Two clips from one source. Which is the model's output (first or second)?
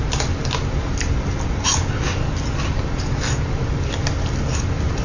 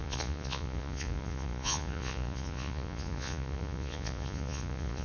second